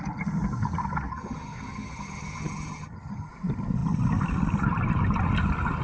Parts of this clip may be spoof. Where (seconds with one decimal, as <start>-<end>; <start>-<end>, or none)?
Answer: 1.1-3.3